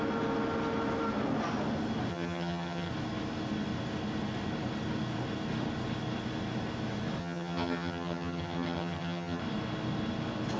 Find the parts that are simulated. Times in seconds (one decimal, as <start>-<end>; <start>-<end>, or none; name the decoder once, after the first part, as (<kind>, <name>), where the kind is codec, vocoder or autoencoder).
2.1-2.9 (vocoder, HiFi-GAN); 7.2-9.4